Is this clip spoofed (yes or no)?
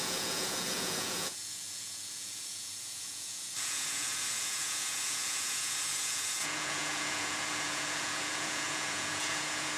yes